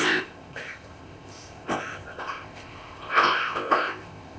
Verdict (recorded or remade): remade